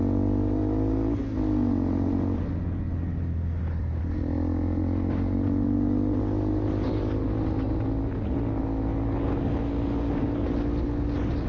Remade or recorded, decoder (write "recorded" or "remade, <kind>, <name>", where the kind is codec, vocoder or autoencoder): recorded